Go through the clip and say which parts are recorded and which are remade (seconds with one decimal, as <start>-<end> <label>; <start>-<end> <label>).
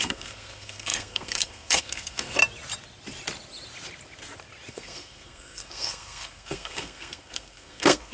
0.0-2.4 remade; 2.4-4.7 recorded; 4.7-8.1 remade